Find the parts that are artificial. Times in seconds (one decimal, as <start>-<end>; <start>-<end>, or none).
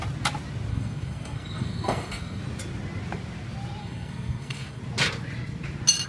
0.7-2.4; 3.8-4.8